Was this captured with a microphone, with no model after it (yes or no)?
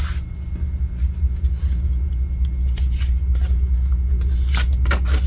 yes